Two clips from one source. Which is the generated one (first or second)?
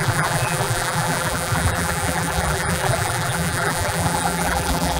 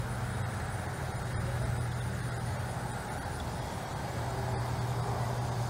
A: first